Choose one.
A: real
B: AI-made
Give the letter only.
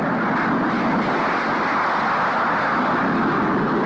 A